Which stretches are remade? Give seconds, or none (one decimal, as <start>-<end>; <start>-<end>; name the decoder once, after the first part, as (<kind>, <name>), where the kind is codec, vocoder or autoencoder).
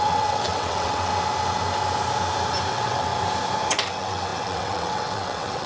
0.0-1.1 (vocoder, WaveNeXt); 2.7-3.1; 3.7-5.7